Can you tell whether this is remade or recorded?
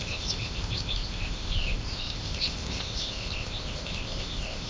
remade